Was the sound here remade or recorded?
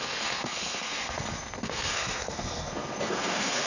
remade